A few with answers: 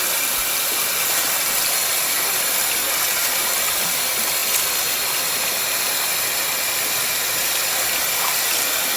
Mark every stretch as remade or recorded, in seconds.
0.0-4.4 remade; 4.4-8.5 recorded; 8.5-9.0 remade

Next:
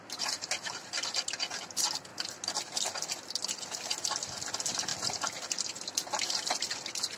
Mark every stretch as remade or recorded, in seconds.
0.0-7.2 recorded

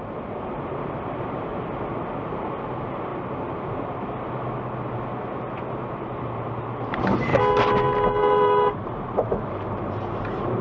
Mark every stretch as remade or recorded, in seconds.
0.0-1.5 remade; 1.5-2.3 recorded; 2.3-3.1 remade; 3.1-6.3 recorded; 6.3-7.3 remade; 7.3-8.2 recorded; 8.2-10.6 remade

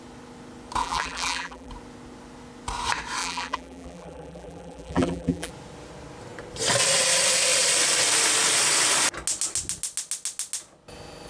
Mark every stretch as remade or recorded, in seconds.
0.0-0.8 recorded; 0.8-1.7 remade; 1.7-3.2 recorded; 3.2-5.5 remade; 5.5-11.3 recorded

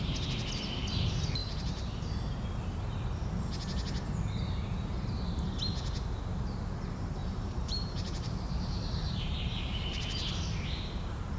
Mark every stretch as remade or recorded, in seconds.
0.0-1.4 recorded; 1.4-2.1 remade; 2.1-7.2 recorded; 7.2-11.4 remade

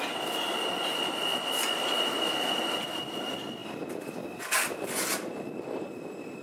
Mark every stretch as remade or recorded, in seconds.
0.0-6.4 recorded

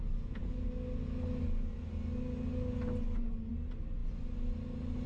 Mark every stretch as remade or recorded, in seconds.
0.0-5.1 recorded